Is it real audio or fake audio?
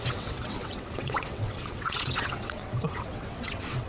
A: fake